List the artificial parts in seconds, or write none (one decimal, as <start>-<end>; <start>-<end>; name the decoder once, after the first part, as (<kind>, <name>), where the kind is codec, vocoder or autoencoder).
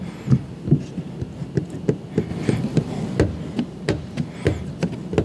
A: none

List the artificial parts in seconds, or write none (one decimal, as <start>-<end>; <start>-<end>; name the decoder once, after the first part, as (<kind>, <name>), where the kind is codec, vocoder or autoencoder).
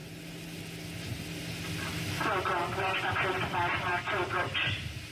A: none